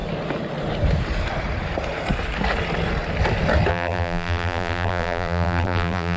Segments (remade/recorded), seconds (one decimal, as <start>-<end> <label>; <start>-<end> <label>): 0.0-3.7 recorded; 3.7-6.2 remade